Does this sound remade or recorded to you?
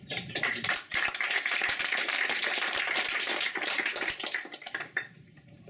remade